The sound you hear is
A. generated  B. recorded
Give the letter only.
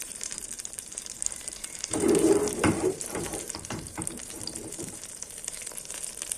A